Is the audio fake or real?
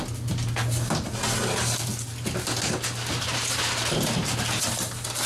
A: real